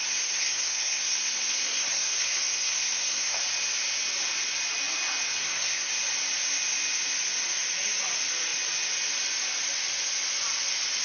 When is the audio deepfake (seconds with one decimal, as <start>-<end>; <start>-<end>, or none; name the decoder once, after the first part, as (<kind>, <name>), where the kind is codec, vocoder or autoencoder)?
0.0-3.4 (codec, SNAC); 5.4-5.9